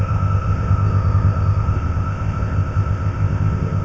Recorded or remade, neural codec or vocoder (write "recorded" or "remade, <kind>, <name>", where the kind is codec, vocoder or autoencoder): remade, codec, ZipCodec